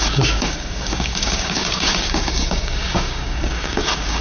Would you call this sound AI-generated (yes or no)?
yes